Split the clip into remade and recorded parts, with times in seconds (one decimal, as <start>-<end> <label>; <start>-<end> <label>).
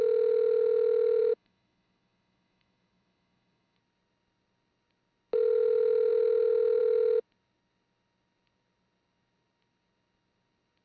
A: 0.0-1.2 recorded; 1.2-3.8 remade; 3.8-10.8 recorded